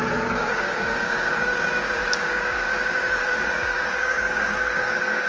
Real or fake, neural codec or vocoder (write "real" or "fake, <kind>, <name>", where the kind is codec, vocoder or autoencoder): fake, codec, DAC